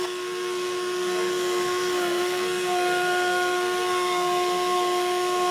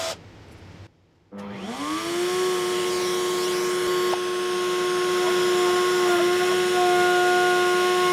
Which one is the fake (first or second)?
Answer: first